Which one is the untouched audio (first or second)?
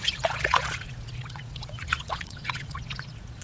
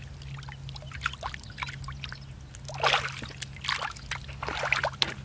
second